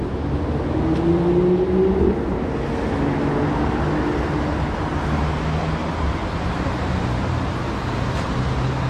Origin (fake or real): real